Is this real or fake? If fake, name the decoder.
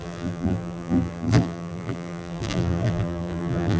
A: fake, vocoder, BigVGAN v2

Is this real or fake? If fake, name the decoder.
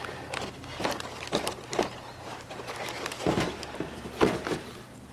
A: real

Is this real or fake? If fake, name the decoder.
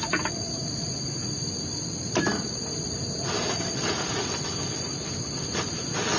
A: real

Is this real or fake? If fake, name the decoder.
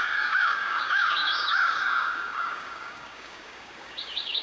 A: fake, codec, DAC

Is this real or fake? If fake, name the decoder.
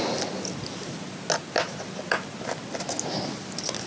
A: real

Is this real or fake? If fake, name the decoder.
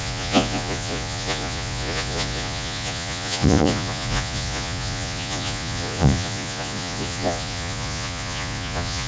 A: fake, vocoder, Vocos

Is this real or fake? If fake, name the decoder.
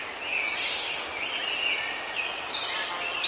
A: real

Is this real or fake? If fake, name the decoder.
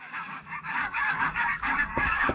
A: fake, codec, DAC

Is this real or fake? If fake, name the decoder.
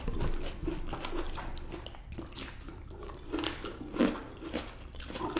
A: real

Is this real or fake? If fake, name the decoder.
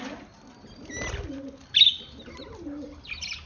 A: real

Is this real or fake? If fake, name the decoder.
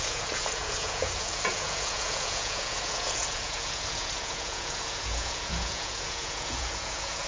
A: fake, vocoder, Vocos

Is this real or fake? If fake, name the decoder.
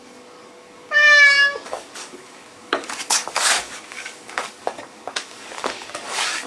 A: fake, codec, DAC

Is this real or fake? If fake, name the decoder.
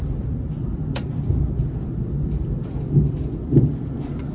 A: real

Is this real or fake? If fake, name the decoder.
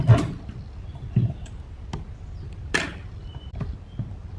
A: real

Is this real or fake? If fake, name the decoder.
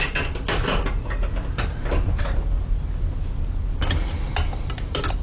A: real